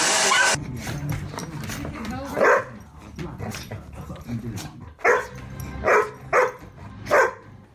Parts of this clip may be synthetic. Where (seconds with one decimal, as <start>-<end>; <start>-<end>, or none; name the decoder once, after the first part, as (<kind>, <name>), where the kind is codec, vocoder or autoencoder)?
none